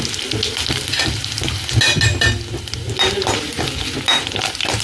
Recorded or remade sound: recorded